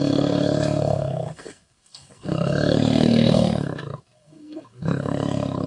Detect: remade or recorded remade